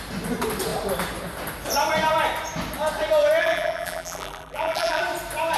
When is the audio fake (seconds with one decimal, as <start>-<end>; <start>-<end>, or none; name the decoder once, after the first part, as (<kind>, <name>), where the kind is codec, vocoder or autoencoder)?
3.4-5.0 (vocoder, BigVGAN v2)